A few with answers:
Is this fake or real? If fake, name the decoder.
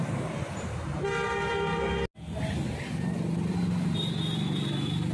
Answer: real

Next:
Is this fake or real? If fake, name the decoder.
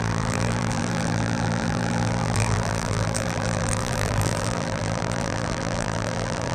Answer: fake, vocoder, BigVGAN v2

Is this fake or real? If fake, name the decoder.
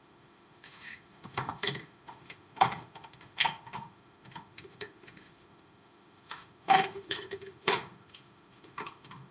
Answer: fake, autoencoder, DAC-VAE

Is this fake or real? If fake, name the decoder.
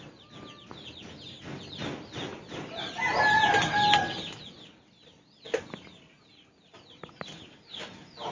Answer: real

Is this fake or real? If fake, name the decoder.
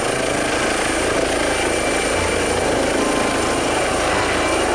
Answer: real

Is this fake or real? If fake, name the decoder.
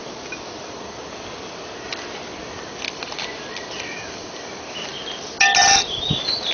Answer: real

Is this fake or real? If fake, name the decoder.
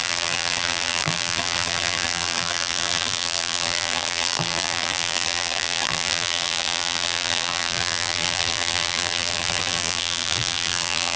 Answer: fake, vocoder, BigVGAN v2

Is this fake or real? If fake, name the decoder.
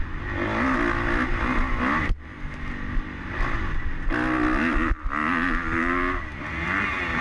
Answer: real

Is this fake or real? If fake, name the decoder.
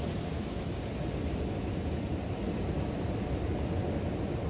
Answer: real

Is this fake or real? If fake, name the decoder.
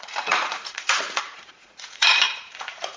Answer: fake, vocoder, Vocos